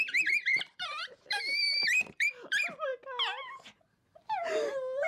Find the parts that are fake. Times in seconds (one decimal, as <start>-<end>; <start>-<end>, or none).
0.0-2.9; 3.9-5.1

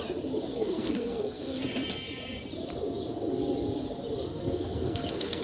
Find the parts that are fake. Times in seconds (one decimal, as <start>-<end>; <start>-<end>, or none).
0.5-1.6; 4.3-5.4

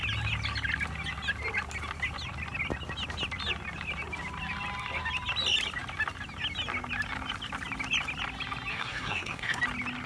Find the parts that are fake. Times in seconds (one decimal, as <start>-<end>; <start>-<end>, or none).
8.7-9.6

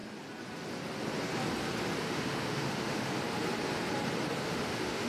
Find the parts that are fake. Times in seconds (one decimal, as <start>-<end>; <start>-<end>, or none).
2.0-3.1; 4.4-5.1